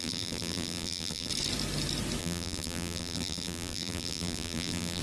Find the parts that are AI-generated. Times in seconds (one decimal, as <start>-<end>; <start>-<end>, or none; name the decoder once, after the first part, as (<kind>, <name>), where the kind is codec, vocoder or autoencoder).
0.0-1.3 (vocoder, BigVGAN v2); 2.2-5.0